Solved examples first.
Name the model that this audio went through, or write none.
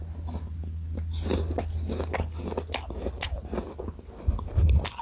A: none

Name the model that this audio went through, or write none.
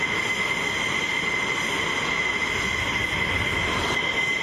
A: none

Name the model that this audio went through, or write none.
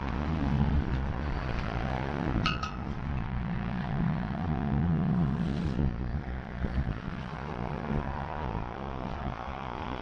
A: vocoder, Vocos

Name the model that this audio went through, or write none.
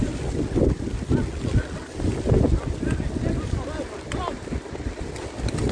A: none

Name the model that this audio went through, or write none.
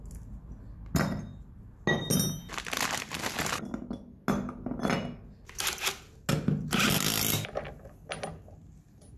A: none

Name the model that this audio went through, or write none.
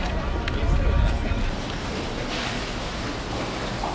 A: none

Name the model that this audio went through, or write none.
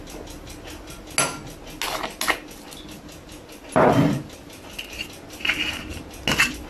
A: none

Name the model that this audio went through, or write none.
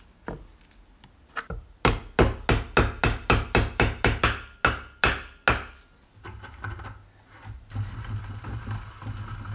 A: none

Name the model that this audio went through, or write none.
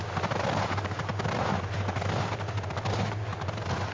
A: none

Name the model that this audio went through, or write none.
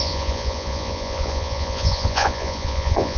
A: vocoder, Vocos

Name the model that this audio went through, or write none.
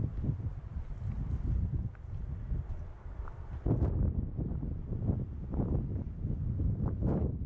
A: none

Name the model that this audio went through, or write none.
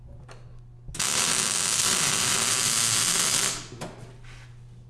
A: none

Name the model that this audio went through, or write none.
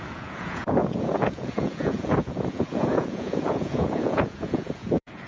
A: vocoder, Vocos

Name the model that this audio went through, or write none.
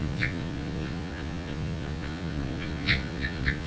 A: vocoder, Vocos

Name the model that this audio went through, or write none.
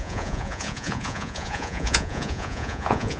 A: vocoder, Vocos